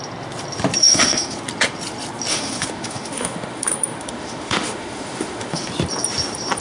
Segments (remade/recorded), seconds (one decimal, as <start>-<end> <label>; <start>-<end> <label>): 0.0-0.8 recorded; 0.8-1.4 remade; 1.4-2.3 recorded; 2.3-5.7 remade; 5.7-6.6 recorded